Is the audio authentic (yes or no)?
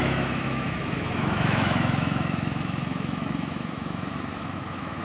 no